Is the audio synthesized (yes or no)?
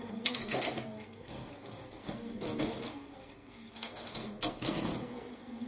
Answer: yes